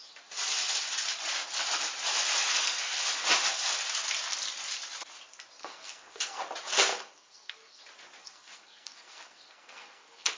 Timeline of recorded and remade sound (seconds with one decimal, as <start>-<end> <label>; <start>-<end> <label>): 0.0-2.4 recorded; 2.4-3.0 remade; 3.0-5.6 recorded; 5.6-6.4 remade; 6.4-6.9 recorded; 6.9-7.8 remade; 7.8-8.2 recorded; 8.2-10.4 remade